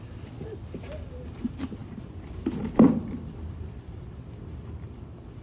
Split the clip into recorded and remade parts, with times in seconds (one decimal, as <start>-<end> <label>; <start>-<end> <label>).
0.0-1.8 recorded; 1.8-5.0 remade; 5.0-5.4 recorded